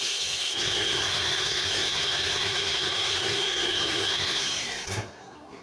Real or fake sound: fake